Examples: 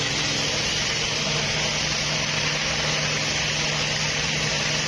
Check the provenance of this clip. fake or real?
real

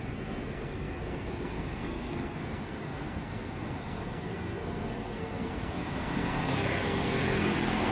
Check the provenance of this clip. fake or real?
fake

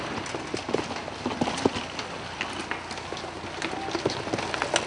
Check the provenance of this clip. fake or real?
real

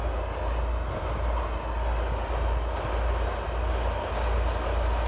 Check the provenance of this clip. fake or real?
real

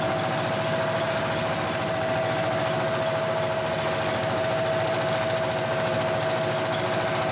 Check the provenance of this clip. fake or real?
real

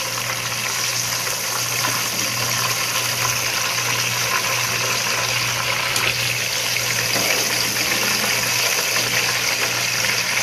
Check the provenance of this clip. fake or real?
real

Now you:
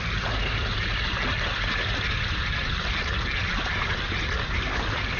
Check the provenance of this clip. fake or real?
real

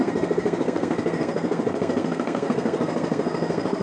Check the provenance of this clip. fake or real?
fake